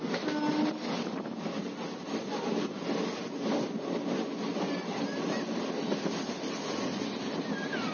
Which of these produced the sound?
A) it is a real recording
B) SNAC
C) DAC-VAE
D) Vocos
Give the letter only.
A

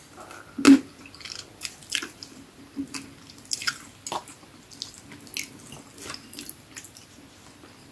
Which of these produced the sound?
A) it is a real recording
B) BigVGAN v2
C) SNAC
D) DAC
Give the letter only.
A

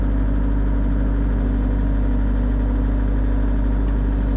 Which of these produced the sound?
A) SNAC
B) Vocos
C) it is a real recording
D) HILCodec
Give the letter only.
C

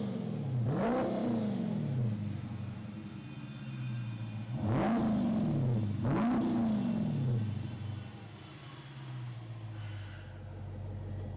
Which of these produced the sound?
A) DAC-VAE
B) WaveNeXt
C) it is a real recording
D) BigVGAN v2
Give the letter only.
C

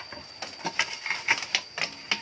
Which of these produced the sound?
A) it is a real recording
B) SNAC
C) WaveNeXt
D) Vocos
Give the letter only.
A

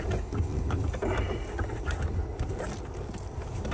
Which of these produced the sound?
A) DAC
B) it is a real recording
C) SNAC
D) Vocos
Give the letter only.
B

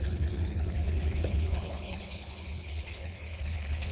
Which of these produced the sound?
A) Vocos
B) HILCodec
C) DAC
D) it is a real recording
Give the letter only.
B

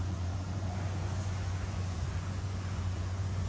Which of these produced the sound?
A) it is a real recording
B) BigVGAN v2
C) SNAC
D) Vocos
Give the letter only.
D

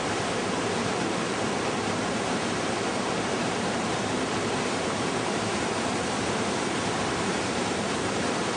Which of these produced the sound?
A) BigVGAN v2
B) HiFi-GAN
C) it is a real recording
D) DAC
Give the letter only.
A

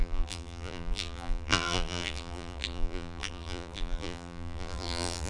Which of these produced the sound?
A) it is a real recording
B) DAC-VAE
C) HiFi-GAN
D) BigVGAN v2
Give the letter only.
D